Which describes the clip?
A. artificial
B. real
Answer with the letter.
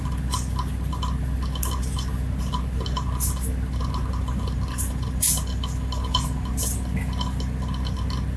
B